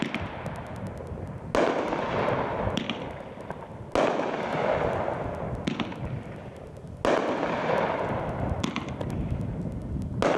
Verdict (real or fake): real